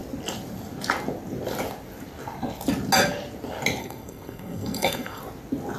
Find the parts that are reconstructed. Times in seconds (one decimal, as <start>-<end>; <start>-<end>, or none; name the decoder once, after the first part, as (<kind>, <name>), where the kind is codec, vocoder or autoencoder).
3.8-5.2 (codec, SNAC)